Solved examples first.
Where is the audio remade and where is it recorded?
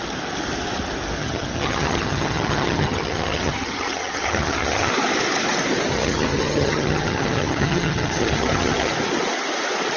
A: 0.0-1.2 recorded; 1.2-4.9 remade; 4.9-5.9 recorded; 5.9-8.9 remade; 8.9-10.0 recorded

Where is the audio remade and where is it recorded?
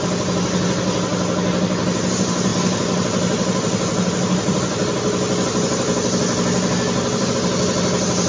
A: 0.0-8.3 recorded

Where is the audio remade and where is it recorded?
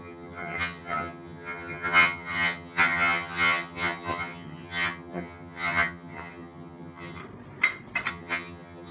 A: 0.0-7.2 remade; 7.2-8.1 recorded; 8.1-8.9 remade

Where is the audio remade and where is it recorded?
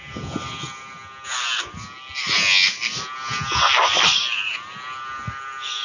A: 0.0-5.8 recorded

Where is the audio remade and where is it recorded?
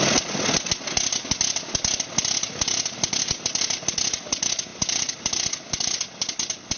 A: 0.0-6.8 recorded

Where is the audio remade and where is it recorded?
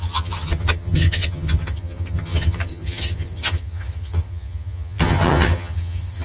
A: 0.0-6.2 remade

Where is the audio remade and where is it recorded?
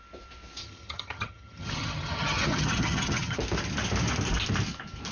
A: 0.0-0.6 recorded; 0.6-3.4 remade; 3.4-5.1 recorded